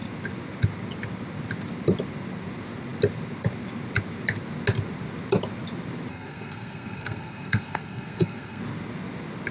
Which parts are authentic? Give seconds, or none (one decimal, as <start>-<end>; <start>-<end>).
0.0-6.1; 8.6-9.5